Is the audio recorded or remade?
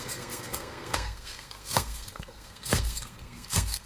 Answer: remade